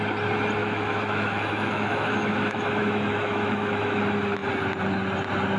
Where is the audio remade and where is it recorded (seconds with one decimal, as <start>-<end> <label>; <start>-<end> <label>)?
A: 0.0-0.6 recorded; 0.6-4.0 remade; 4.0-5.6 recorded